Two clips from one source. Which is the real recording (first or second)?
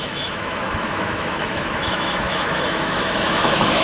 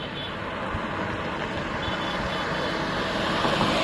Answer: second